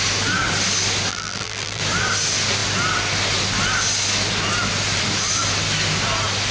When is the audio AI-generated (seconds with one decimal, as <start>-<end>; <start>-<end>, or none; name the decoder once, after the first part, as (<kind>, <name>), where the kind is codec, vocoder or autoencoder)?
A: 1.1-1.8 (vocoder, BigVGAN v2)